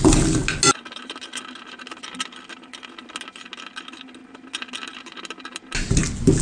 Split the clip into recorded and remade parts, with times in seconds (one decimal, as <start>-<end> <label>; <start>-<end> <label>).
0.0-6.4 recorded